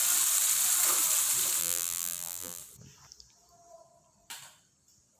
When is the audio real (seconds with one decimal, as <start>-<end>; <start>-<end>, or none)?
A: 0.0-1.6; 2.6-5.2